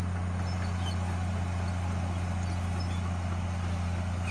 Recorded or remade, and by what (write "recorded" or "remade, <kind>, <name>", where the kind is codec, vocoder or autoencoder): recorded